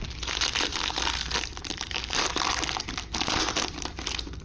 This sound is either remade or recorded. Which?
recorded